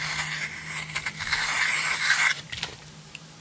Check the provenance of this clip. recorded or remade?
recorded